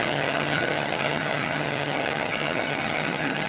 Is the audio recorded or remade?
remade